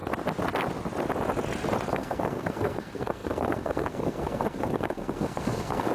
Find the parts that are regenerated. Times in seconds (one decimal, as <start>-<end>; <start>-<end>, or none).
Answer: 1.9-5.9